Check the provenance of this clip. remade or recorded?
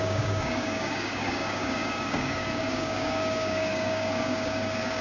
remade